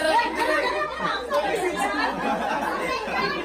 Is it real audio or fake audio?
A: fake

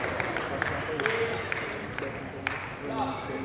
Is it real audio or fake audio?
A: real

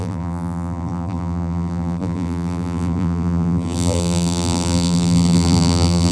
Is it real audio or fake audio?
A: fake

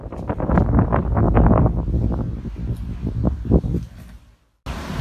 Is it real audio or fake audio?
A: real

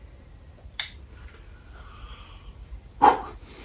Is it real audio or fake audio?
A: real